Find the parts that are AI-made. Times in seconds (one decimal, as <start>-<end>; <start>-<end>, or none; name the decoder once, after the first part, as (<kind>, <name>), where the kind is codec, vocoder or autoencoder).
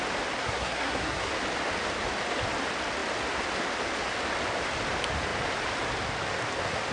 0.4-1.3 (codec, SNAC)